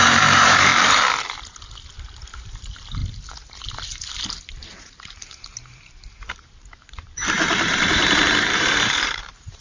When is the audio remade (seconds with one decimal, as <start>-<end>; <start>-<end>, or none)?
0.0-0.7; 2.4-3.0; 4.5-9.6